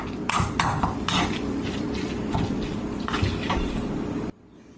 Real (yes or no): yes